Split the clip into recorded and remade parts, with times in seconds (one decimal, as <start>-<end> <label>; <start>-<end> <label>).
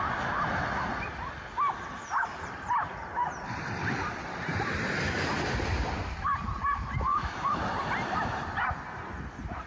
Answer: 0.0-7.1 recorded; 7.1-7.6 remade; 7.6-9.7 recorded